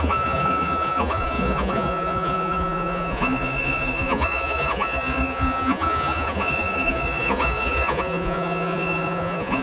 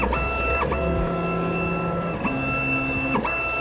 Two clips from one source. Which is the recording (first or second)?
second